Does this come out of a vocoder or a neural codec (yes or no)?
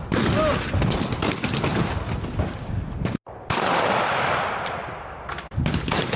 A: no